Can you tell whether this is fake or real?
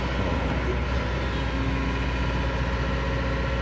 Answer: real